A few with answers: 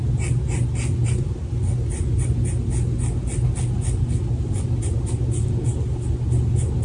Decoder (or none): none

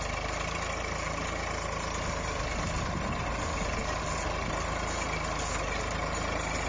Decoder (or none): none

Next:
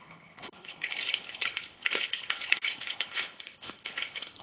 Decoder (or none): codec, HILCodec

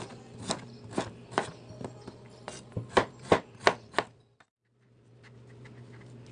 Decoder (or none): none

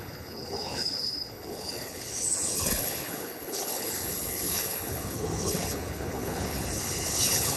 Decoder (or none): codec, HILCodec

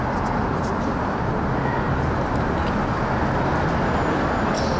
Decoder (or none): none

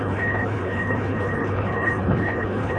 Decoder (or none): codec, HILCodec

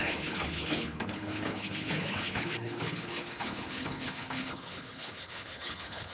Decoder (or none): codec, HILCodec